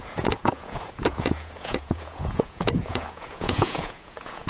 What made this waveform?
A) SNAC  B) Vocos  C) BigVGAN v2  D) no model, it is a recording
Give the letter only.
B